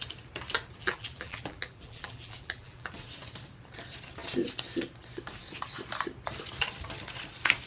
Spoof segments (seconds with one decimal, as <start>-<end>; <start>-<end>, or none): 0.8-2.9

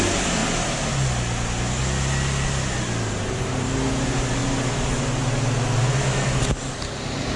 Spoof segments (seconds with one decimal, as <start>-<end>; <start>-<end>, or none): none

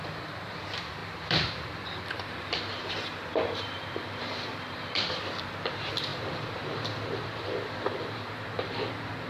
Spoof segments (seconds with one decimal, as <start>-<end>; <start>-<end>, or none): 0.0-9.3

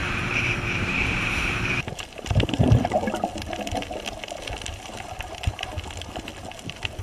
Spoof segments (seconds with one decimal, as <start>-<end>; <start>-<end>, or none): 0.0-3.0; 4.7-5.7

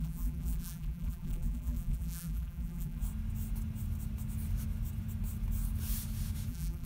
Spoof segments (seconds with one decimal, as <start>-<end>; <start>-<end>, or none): 0.0-3.0; 6.5-6.9